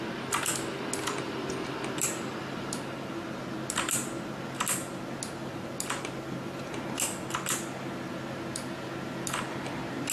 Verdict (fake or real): real